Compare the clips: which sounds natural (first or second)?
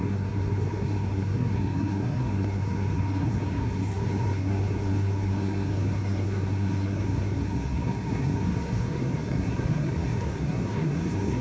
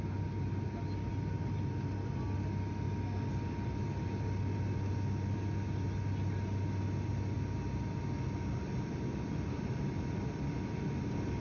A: second